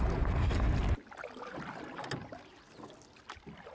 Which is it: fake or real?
real